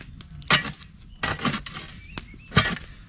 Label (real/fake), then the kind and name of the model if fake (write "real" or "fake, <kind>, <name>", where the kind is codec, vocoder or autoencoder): real